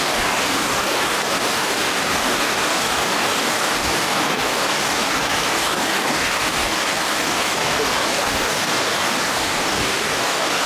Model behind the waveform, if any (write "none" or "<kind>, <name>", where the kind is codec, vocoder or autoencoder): codec, DAC